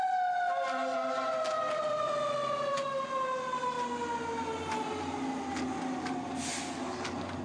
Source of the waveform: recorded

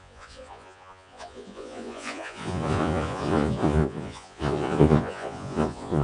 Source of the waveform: remade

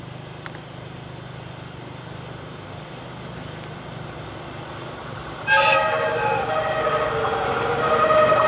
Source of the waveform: recorded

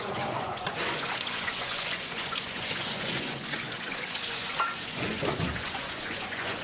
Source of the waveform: remade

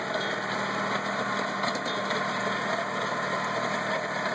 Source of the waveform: recorded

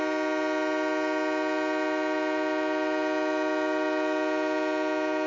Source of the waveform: recorded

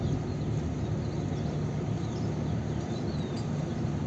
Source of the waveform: recorded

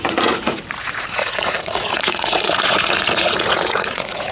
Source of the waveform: remade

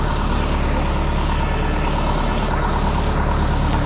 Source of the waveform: recorded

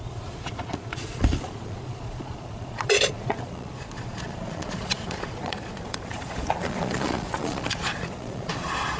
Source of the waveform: remade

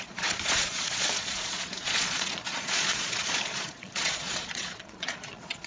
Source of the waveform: remade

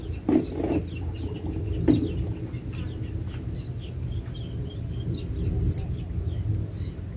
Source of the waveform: recorded